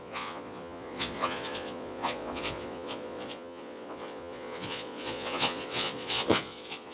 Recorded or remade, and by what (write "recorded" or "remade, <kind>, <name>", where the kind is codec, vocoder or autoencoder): remade, vocoder, Vocos